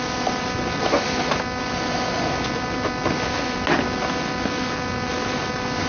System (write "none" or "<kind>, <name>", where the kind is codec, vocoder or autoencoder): none